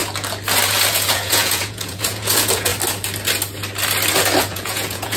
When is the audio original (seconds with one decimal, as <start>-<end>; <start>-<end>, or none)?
0.0-0.9; 2.7-4.4